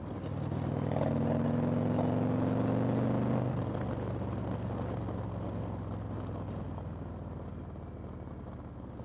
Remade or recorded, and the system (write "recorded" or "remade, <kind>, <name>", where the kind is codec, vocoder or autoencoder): recorded